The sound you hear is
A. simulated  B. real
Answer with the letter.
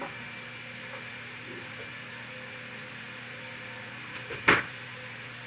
B